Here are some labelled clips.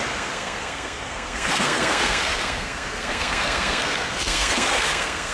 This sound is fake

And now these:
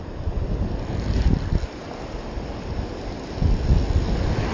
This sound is real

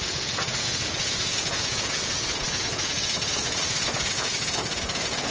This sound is fake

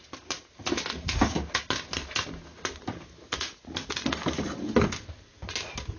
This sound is real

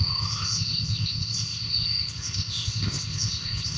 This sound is fake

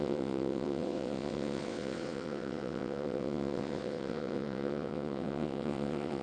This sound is fake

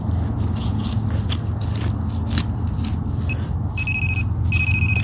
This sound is real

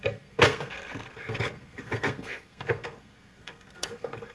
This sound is fake